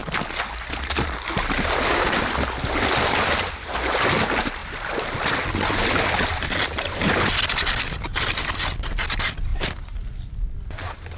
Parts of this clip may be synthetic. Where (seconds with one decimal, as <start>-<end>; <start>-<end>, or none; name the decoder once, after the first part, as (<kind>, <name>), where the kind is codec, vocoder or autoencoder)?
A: none